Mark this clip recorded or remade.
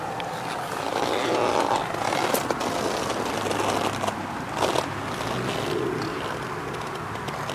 recorded